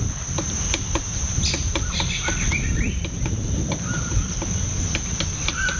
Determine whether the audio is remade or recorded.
recorded